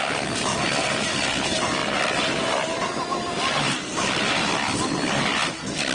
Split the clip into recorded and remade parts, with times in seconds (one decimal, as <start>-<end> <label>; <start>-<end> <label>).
0.0-5.9 recorded